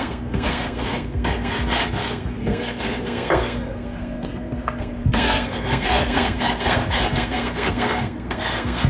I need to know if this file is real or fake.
fake